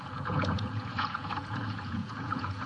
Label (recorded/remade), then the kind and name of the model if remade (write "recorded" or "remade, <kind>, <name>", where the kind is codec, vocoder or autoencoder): remade, vocoder, Vocos